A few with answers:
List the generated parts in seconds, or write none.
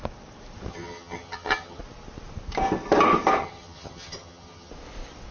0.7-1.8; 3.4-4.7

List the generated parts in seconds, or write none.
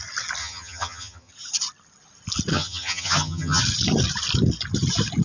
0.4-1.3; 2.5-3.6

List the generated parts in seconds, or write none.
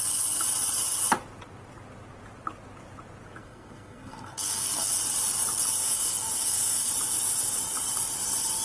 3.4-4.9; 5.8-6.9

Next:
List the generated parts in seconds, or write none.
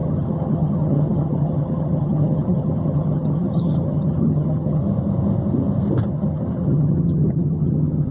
0.0-4.8; 6.1-8.1